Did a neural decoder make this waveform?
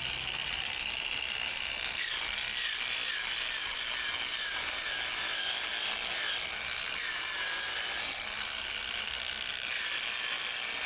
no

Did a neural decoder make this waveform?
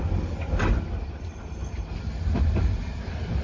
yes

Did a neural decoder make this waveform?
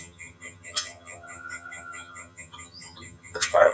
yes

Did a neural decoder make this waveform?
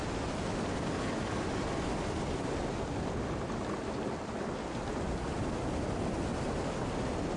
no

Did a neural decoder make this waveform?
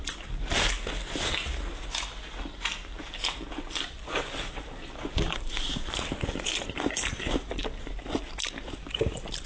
no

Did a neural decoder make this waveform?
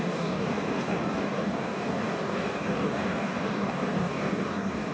yes